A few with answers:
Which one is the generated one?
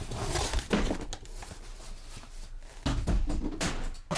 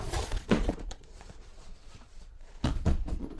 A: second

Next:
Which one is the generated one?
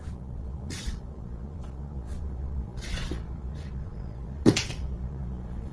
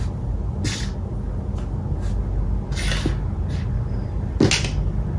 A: first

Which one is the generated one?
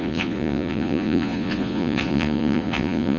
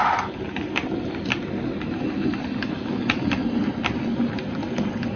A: first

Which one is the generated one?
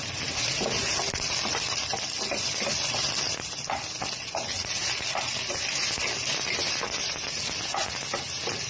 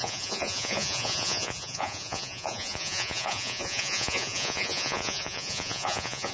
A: second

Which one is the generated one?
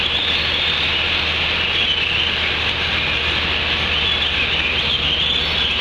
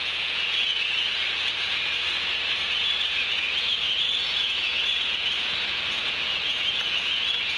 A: second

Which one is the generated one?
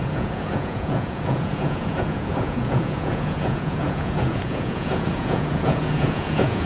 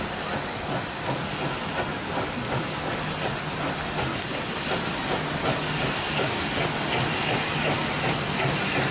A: first